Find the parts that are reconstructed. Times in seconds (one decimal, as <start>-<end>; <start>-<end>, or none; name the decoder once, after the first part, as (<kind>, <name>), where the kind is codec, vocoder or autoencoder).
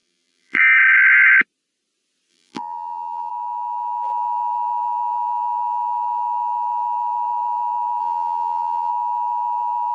0.0-0.6 (vocoder, BigVGAN v2); 2.3-3.3; 8.0-8.9